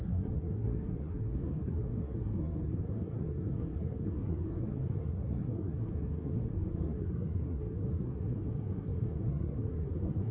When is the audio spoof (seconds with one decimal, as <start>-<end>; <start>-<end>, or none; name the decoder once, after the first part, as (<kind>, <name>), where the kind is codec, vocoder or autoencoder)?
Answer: 0.0-10.3 (codec, SNAC)